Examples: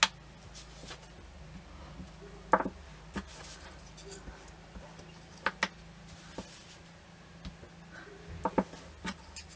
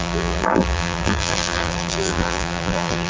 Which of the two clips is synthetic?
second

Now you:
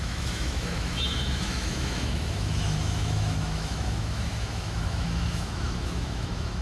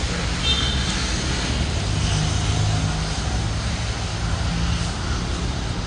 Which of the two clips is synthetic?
first